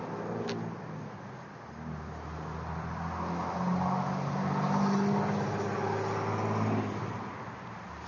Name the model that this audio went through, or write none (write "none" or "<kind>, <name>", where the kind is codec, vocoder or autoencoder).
none